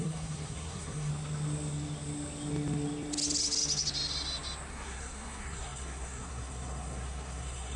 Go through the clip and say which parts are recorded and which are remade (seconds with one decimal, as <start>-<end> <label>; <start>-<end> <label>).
0.0-1.1 remade; 1.1-4.7 recorded; 4.7-7.8 remade

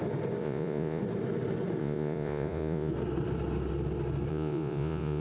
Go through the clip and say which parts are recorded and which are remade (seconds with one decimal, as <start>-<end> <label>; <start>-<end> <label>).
0.0-0.4 recorded; 0.4-1.0 remade; 1.0-1.8 recorded; 1.8-2.9 remade; 2.9-4.3 recorded; 4.3-5.2 remade

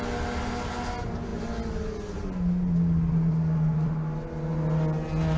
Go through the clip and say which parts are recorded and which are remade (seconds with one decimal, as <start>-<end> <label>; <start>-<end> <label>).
0.0-5.4 recorded

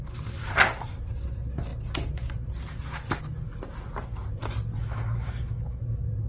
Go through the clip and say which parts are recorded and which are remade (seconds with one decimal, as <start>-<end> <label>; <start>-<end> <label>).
0.0-4.8 recorded; 4.8-5.8 remade; 5.8-6.3 recorded

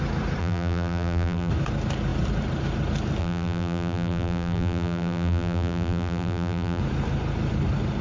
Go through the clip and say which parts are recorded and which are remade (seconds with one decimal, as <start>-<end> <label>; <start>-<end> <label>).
0.0-0.4 recorded; 0.4-1.5 remade; 1.5-3.2 recorded; 3.2-6.8 remade; 6.8-8.0 recorded

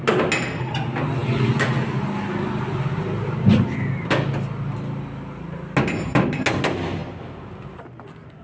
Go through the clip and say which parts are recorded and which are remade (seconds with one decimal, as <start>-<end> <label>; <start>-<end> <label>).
0.0-8.4 recorded

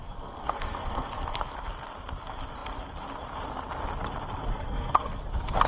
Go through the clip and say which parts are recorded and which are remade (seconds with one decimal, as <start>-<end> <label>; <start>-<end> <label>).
0.0-1.4 remade; 1.4-4.5 recorded; 4.5-5.2 remade; 5.2-5.7 recorded

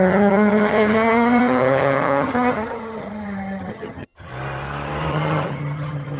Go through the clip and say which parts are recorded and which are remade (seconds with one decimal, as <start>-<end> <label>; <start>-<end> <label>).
0.0-4.3 remade; 4.3-5.1 recorded; 5.1-6.2 remade